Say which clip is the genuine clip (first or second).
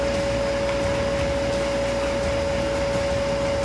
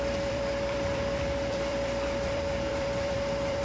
first